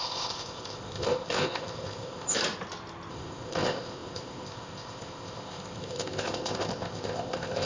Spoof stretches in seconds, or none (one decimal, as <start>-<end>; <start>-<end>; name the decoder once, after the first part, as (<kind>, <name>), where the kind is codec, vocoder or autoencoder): 0.0-2.4 (codec, ZipCodec); 3.1-7.7